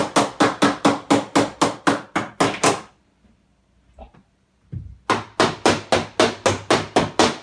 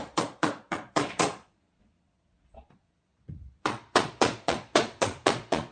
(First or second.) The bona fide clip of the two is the first